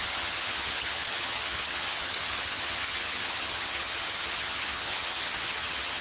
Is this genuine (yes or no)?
no